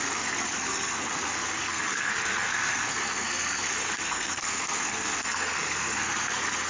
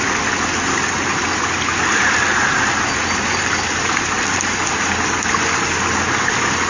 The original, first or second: second